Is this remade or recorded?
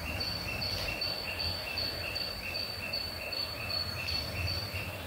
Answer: remade